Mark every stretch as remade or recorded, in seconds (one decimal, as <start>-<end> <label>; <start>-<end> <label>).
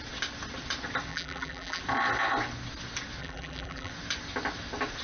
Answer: 0.0-1.1 recorded; 1.1-1.8 remade; 1.8-3.2 recorded; 3.2-3.9 remade; 3.9-5.0 recorded